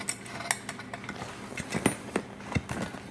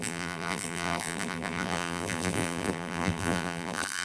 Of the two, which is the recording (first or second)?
first